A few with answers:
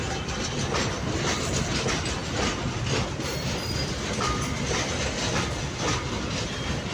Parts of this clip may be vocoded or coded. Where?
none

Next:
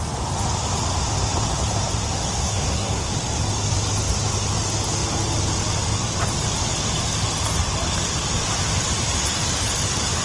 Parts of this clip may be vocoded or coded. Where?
2.4-3.1 (codec, SNAC)

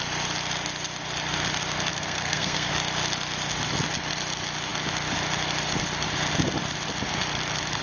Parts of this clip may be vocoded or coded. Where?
1.9-2.7 (codec, SNAC)